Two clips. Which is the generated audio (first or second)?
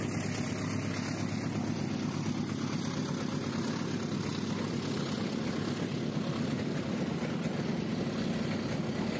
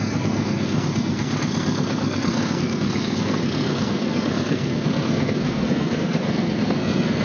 second